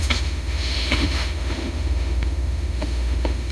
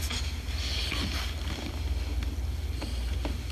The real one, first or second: second